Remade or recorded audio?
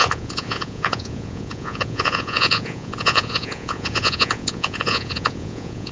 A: remade